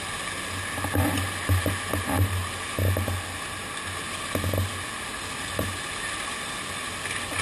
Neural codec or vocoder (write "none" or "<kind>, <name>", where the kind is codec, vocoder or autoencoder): none